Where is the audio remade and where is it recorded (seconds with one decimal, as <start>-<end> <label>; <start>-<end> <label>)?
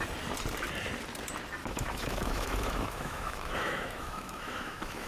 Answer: 0.0-1.6 recorded; 1.6-5.1 remade